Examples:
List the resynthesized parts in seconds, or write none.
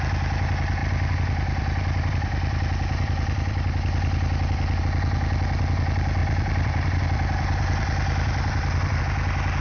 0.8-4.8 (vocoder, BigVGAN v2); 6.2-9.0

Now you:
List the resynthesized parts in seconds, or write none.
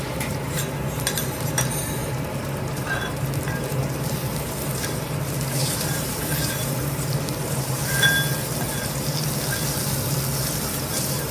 0.0-7.8 (vocoder, BigVGAN v2); 10.7-11.3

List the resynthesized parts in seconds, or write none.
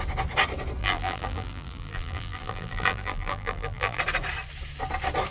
0.8-4.0 (vocoder, BigVGAN v2)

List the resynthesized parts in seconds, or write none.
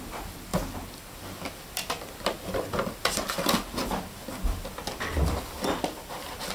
none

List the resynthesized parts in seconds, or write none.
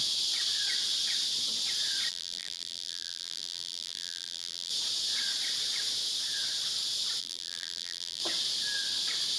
2.1-4.7 (vocoder, BigVGAN v2); 7.2-8.2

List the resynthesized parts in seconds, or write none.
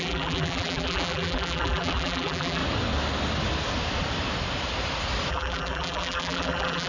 0.0-2.6 (vocoder, BigVGAN v2); 5.3-6.9